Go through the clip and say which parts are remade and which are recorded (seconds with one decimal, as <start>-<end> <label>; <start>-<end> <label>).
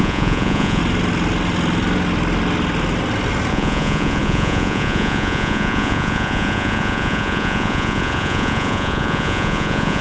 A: 0.0-0.8 remade; 0.8-3.5 recorded; 3.5-10.0 remade